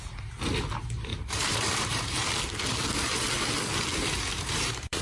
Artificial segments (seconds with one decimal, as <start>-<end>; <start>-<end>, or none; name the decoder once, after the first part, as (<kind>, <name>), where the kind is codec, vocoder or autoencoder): 1.1-2.4 (vocoder, BigVGAN v2); 4.3-5.0